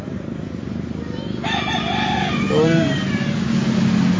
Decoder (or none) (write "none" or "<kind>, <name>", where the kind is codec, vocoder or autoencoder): none